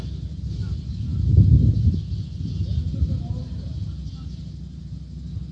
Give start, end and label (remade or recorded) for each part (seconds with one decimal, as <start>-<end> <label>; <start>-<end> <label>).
0.0-5.5 recorded